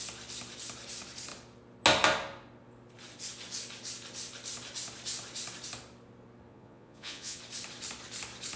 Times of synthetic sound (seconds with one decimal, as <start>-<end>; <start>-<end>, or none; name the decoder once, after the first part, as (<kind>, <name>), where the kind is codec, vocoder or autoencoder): 6.5-7.4 (vocoder, Vocos)